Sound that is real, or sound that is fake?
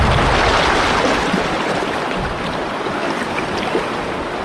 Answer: real